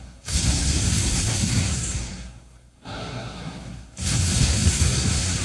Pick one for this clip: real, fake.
fake